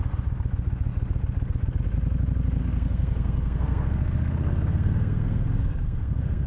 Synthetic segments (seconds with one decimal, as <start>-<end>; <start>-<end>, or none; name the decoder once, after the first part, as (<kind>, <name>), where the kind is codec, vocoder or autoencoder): 2.6-6.5 (codec, SNAC)